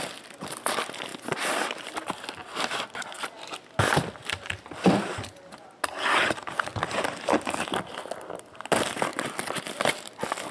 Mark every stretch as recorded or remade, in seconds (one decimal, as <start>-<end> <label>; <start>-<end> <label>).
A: 0.0-10.5 recorded

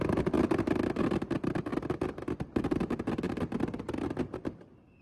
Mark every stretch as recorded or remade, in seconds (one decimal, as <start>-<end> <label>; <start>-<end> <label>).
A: 0.0-5.0 recorded

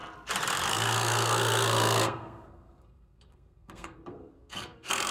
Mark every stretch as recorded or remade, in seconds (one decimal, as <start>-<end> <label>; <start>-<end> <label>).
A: 0.0-0.7 recorded; 0.7-5.1 remade

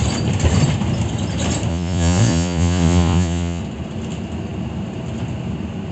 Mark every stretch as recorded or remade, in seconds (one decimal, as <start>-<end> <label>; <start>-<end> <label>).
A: 0.0-1.7 recorded; 1.7-3.6 remade; 3.6-5.9 recorded